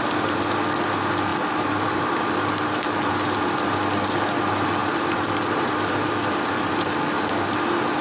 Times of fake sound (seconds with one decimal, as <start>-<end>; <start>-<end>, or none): 1.3-3.1; 4.8-6.7